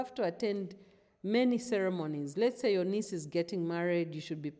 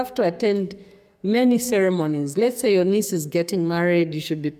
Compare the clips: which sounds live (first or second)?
first